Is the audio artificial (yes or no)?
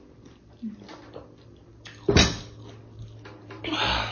no